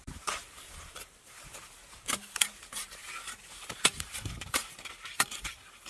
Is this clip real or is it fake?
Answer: fake